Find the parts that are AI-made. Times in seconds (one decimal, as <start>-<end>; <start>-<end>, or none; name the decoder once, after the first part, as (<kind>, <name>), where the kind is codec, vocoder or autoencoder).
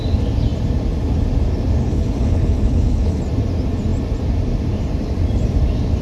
1.8-3.2 (codec, HILCodec)